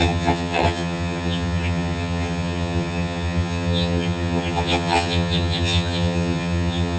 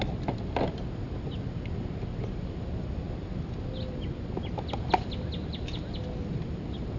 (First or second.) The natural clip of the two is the second